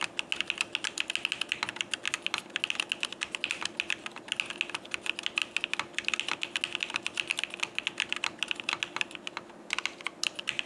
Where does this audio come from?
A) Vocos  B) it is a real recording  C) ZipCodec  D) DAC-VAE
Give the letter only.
B